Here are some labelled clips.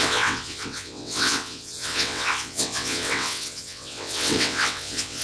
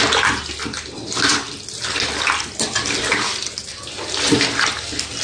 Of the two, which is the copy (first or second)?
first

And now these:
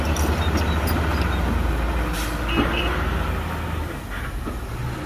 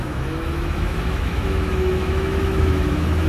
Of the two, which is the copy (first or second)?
second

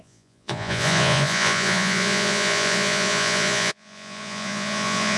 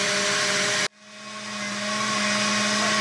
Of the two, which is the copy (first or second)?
first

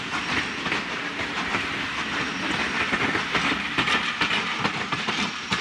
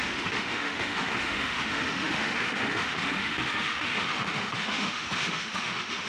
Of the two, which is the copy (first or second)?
second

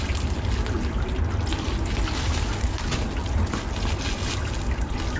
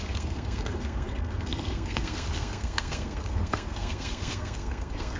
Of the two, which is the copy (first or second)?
second